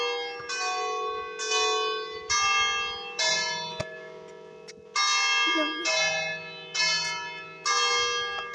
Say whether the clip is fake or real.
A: real